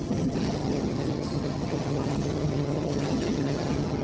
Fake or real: fake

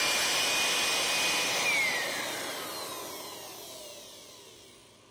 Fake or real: real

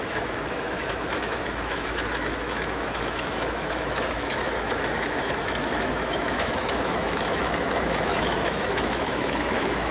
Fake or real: fake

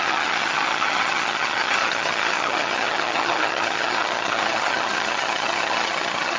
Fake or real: fake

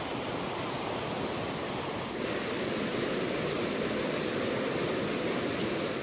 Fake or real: real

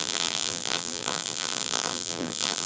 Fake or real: fake